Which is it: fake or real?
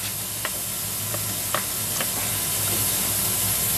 real